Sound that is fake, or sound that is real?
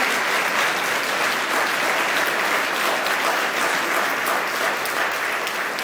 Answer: real